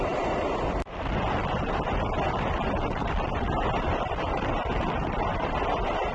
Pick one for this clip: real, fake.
fake